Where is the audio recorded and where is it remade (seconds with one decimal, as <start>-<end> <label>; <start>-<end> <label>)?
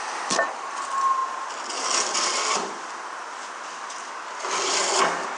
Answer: 0.0-5.4 recorded